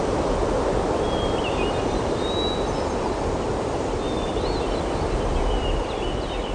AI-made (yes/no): no